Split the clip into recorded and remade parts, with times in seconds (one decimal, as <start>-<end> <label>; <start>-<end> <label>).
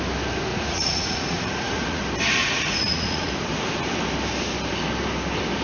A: 0.0-0.5 recorded; 0.5-2.0 remade; 2.0-2.4 recorded; 2.4-3.3 remade; 3.3-5.6 recorded